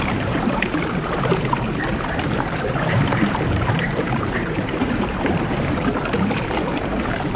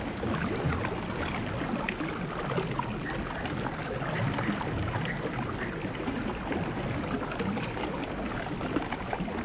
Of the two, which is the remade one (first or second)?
first